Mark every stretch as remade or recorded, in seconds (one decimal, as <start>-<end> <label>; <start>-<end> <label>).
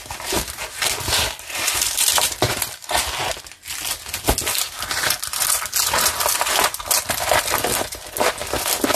0.0-9.0 recorded